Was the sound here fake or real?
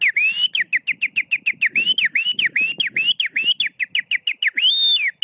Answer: real